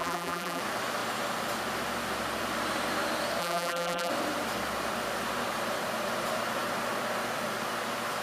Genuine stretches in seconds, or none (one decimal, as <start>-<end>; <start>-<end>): 0.6-3.4; 4.1-8.2